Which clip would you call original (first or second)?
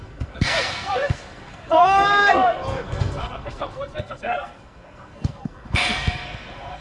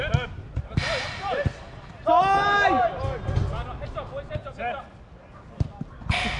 second